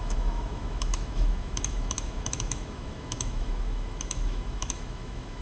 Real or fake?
fake